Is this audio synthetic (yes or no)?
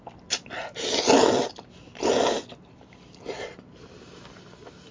no